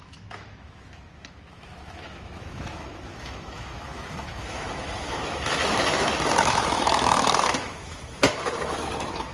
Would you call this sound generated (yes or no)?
yes